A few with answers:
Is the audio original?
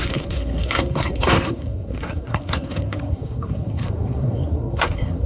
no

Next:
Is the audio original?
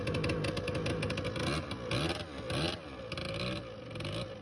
yes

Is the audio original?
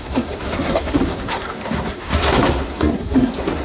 no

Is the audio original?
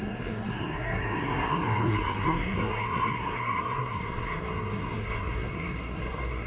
no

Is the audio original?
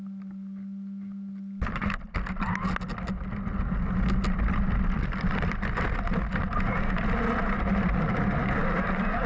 yes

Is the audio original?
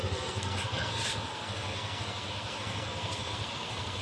no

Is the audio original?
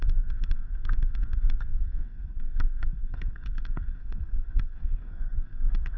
no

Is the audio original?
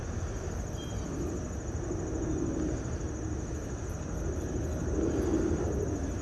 yes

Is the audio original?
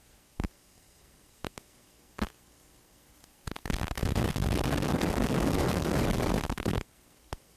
no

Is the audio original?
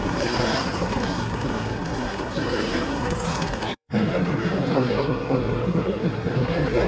no